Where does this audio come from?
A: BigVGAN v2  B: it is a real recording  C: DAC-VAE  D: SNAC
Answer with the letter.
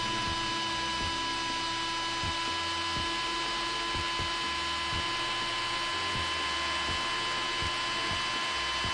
B